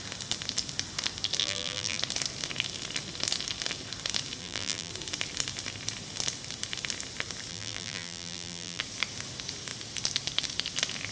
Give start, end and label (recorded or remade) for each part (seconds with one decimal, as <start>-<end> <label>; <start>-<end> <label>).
0.0-1.4 recorded; 1.4-2.0 remade; 2.0-4.4 recorded; 4.4-4.9 remade; 4.9-7.5 recorded; 7.5-8.8 remade; 8.8-11.1 recorded